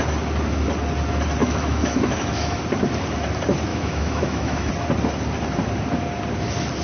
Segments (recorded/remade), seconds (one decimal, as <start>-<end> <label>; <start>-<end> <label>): 0.0-1.4 recorded; 1.4-2.6 remade; 2.6-3.7 recorded; 3.7-4.7 remade; 4.7-6.8 recorded